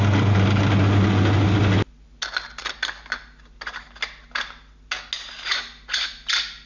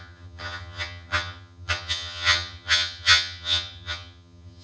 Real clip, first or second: first